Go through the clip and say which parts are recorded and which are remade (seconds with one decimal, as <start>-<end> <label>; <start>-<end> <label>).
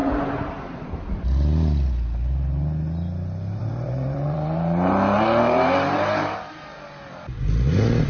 0.0-1.0 remade; 1.0-3.6 recorded; 3.6-7.4 remade; 7.4-8.1 recorded